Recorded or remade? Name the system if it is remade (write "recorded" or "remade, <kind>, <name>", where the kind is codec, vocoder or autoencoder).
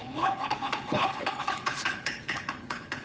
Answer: remade, codec, HILCodec